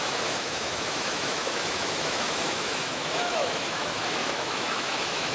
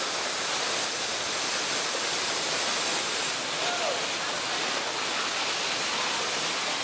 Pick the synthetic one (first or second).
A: first